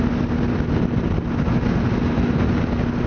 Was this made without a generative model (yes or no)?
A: yes